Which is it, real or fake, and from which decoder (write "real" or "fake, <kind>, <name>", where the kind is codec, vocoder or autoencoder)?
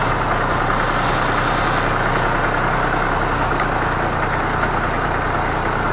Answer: real